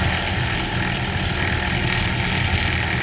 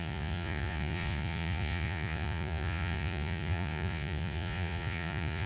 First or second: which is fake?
second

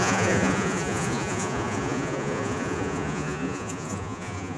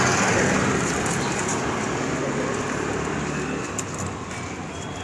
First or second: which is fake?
first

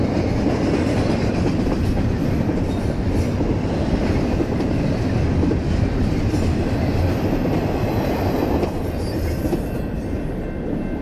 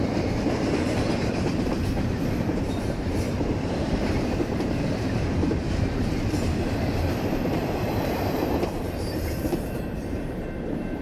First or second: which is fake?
second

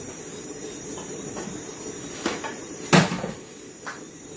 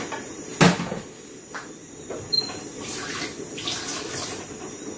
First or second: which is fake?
first